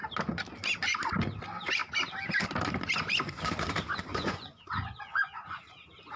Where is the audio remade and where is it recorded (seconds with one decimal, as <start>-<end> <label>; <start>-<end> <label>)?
0.0-4.1 recorded; 4.1-5.6 remade; 5.6-6.2 recorded